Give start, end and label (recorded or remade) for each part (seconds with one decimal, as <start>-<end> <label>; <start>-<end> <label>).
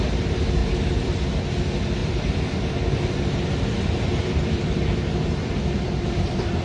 0.0-0.6 recorded; 0.6-1.5 remade; 1.5-2.0 recorded; 2.0-6.0 remade; 6.0-6.6 recorded